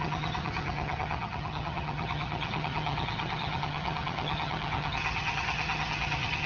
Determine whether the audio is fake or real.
fake